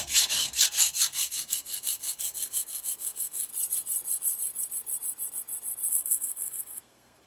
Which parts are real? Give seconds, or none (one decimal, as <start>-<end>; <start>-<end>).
3.5-5.9